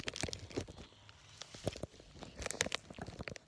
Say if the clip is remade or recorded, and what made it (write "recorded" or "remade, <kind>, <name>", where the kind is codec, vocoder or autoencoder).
recorded